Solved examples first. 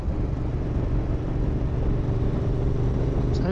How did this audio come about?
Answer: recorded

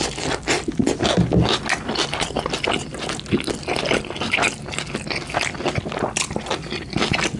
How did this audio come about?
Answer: recorded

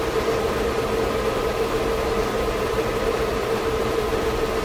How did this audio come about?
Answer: recorded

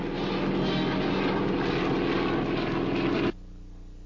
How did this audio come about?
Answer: recorded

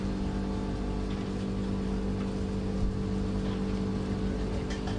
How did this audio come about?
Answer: recorded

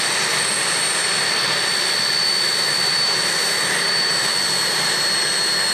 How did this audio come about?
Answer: recorded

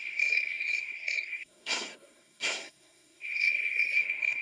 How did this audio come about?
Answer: remade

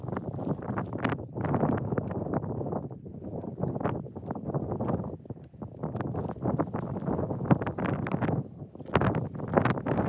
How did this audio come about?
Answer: recorded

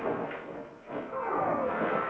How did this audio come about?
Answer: remade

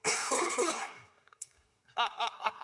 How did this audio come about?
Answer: remade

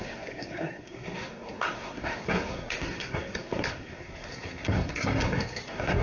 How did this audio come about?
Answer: remade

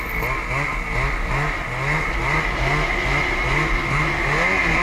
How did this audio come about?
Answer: recorded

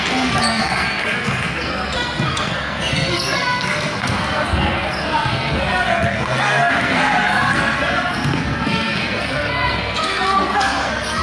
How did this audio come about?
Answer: remade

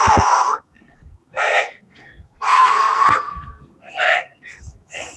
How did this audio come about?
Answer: remade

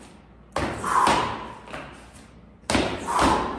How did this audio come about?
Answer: recorded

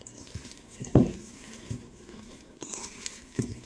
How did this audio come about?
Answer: remade